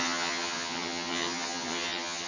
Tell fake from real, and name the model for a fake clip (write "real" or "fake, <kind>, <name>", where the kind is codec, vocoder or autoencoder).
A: fake, vocoder, HiFi-GAN